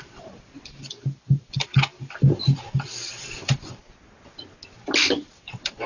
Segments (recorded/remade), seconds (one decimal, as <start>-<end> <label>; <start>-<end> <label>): 0.0-3.8 remade; 3.8-5.2 recorded; 5.2-5.9 remade